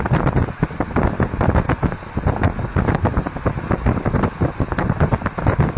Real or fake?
real